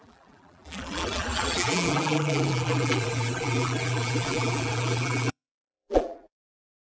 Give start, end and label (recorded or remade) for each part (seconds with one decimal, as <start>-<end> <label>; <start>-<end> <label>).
0.0-6.8 remade